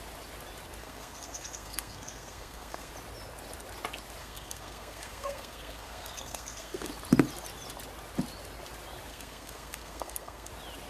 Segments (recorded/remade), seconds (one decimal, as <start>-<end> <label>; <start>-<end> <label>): 0.0-0.8 recorded; 0.8-2.9 remade; 2.9-4.2 recorded; 4.2-6.9 remade; 6.9-9.1 recorded; 9.1-10.5 remade; 10.5-10.9 recorded